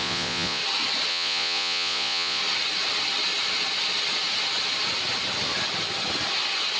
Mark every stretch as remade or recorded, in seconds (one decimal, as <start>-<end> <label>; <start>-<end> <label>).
0.0-0.6 remade; 0.6-1.1 recorded; 1.1-2.4 remade; 2.4-6.8 recorded